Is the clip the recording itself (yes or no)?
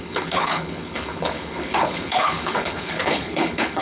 no